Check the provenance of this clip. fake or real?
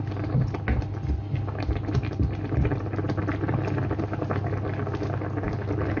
real